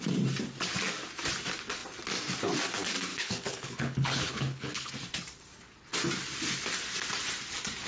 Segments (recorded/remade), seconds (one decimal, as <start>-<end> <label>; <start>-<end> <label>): 0.0-3.1 recorded; 3.1-4.9 remade; 4.9-7.9 recorded